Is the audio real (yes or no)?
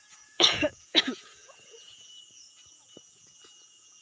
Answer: no